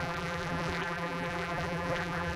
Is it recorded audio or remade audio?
remade